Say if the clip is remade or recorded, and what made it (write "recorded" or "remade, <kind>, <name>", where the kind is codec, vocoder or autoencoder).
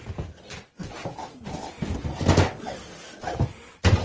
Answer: recorded